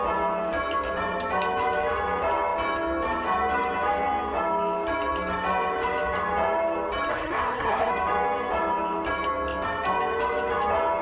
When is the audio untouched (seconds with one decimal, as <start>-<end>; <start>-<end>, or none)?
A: 0.0-7.1; 7.9-11.0